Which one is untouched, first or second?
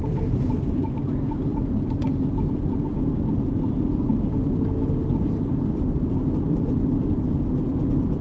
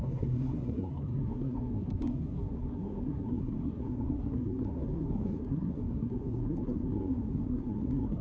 first